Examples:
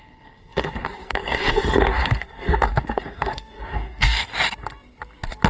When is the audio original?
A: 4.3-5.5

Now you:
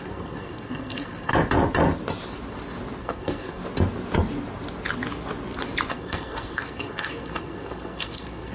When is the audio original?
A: 1.3-3.0; 3.6-5.9

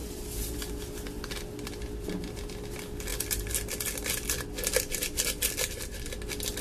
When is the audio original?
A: 0.0-6.6

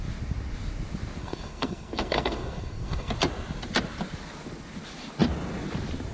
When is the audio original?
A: 0.0-1.2; 3.1-6.1

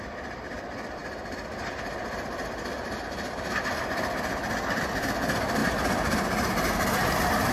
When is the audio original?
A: 0.0-7.5

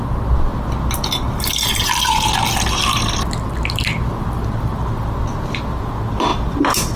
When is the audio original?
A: 0.0-7.0

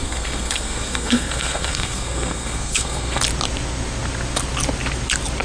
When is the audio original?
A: 3.2-5.4